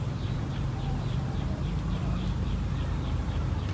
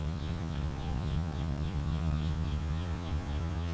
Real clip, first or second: first